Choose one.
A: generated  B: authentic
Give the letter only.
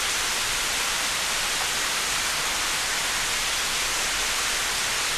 B